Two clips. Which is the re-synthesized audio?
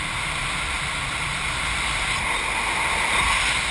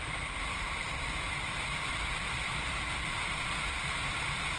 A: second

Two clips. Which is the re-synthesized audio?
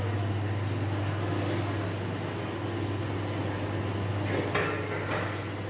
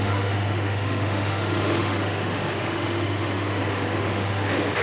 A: second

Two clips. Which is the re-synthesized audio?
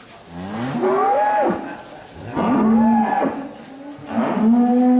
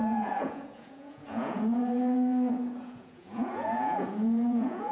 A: second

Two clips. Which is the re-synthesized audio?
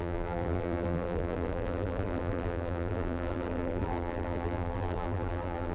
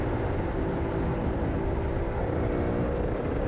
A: first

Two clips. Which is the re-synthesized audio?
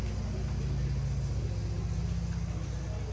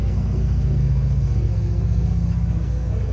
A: second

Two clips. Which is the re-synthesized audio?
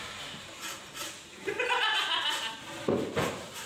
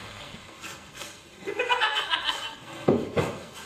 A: second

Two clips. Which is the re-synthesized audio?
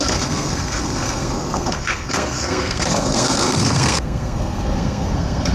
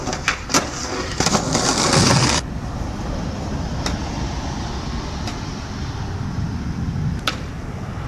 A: first